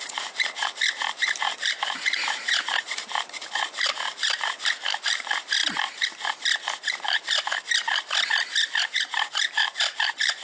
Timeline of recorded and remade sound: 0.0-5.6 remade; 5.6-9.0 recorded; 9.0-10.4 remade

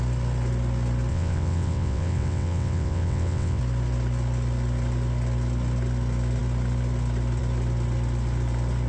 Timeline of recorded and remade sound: 0.0-1.1 recorded; 1.1-3.6 remade; 3.6-8.9 recorded